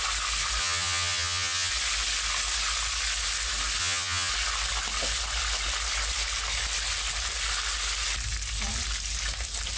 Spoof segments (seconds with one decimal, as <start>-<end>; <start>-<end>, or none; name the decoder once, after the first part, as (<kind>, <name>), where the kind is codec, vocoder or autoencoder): 0.6-1.7 (vocoder, HiFi-GAN); 3.8-4.3